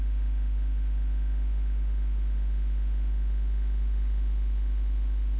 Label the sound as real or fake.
fake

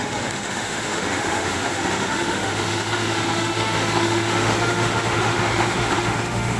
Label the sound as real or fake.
fake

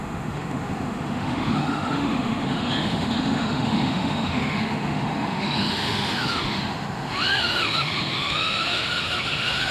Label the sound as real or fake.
fake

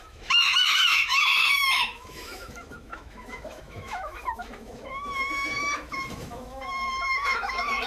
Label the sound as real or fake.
fake